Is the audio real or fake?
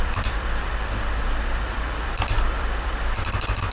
fake